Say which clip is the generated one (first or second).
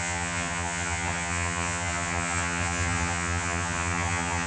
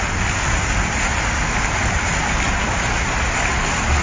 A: first